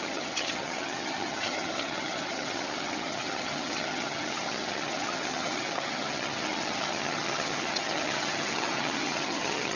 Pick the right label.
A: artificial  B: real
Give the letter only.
A